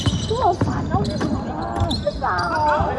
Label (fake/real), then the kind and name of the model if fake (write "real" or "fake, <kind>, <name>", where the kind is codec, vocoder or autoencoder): real